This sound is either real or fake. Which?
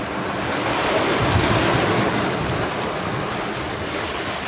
real